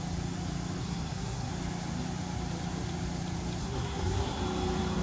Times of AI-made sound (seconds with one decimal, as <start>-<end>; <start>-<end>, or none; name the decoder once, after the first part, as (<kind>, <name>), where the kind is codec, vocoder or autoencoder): 0.8-1.5 (codec, SNAC); 3.6-4.4